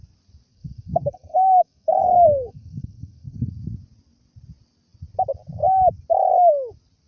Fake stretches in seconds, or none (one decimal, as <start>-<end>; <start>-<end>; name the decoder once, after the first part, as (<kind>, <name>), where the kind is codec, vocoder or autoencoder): 0.5-3.5 (codec, SNAC)